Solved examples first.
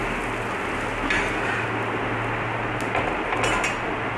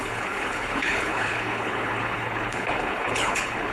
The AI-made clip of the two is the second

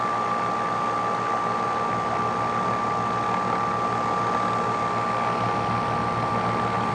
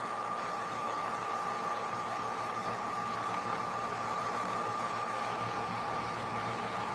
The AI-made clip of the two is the second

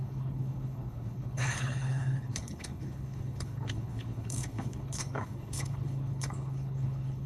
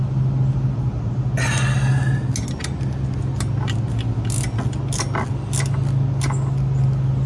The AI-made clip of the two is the first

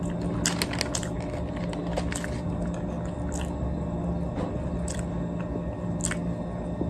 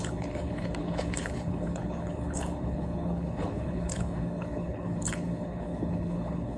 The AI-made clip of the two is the second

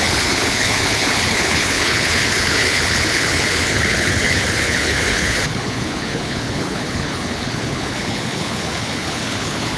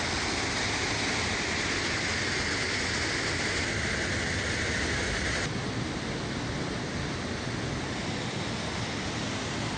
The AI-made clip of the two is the first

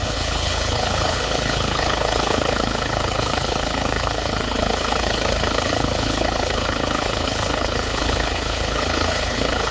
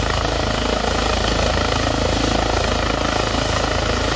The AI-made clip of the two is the first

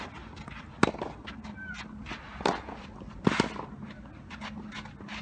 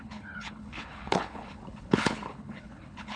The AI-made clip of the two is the second